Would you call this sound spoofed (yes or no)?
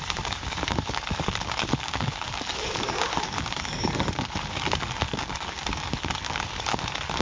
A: yes